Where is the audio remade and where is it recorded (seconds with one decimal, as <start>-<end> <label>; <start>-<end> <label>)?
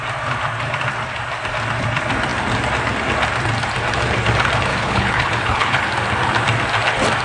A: 0.0-4.7 recorded; 4.7-5.8 remade; 5.8-7.2 recorded